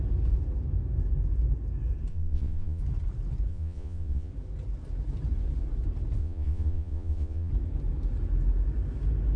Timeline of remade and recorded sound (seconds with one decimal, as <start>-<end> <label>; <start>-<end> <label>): 0.0-2.1 recorded; 2.1-2.8 remade; 2.8-3.5 recorded; 3.5-4.3 remade; 4.3-6.2 recorded; 6.2-7.5 remade; 7.5-9.4 recorded